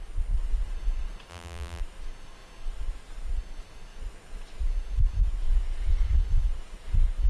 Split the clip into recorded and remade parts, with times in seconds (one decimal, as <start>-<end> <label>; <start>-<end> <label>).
0.0-1.3 recorded; 1.3-1.8 remade; 1.8-7.3 recorded